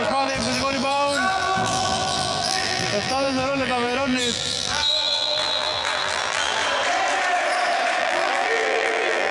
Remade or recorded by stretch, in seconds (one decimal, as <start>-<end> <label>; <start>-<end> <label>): 0.0-6.6 remade; 6.6-8.0 recorded; 8.0-9.3 remade